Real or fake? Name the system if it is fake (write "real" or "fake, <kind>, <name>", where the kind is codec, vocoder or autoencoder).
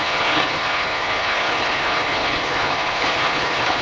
fake, codec, HILCodec